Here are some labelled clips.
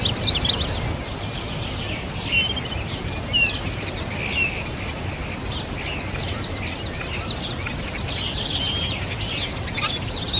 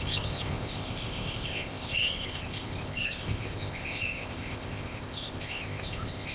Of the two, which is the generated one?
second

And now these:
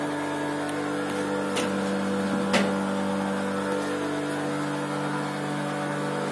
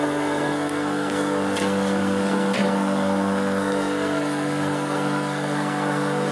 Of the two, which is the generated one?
second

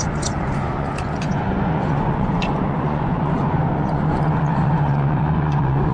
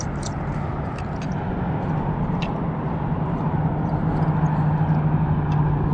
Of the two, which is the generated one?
first